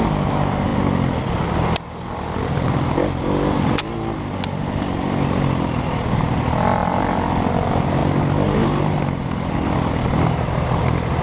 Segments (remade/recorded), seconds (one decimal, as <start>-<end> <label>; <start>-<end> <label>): 0.0-11.2 recorded